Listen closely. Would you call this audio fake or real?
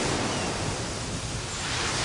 real